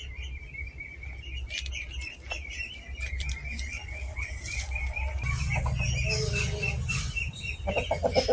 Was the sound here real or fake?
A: real